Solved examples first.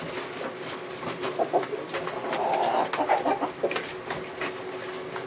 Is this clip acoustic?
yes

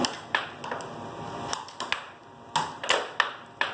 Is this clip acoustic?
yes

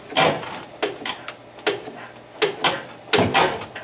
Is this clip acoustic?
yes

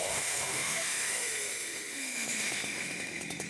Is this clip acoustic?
no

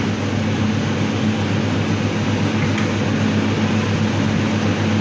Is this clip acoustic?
yes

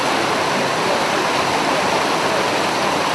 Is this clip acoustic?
yes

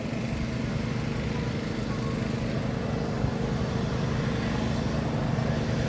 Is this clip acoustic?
yes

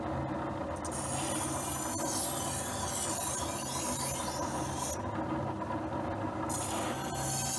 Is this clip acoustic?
yes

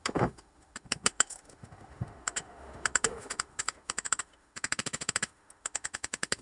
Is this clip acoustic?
no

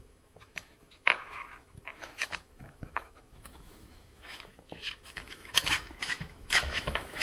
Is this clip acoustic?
no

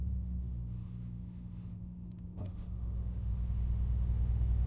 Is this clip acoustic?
no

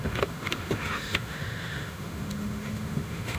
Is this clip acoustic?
no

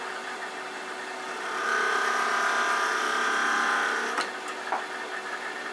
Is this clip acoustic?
yes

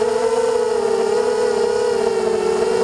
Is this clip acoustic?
yes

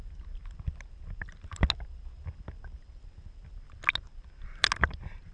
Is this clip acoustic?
yes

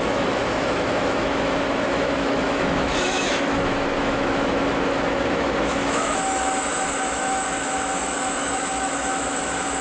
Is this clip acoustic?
no